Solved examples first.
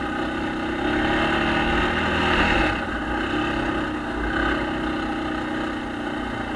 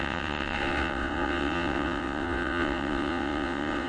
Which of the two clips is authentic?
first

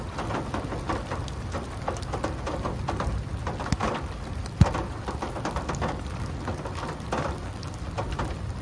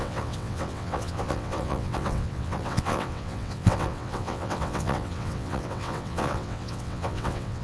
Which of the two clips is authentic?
first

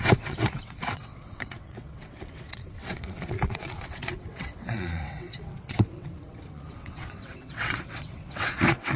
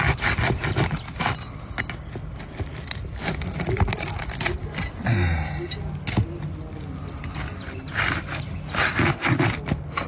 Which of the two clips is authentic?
second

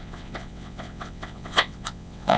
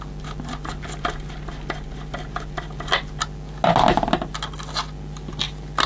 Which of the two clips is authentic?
second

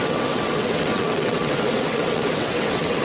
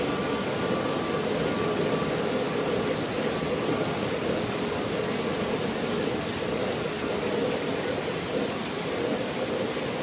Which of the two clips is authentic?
second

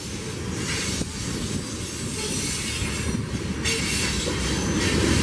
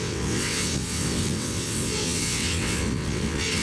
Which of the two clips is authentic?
first